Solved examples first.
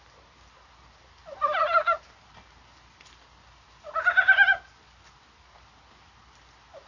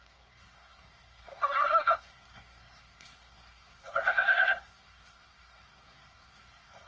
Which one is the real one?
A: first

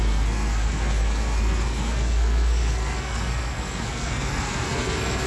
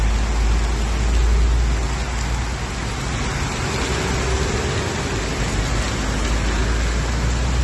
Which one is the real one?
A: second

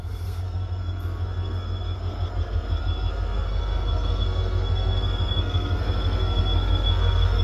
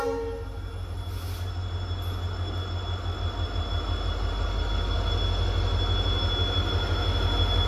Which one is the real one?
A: second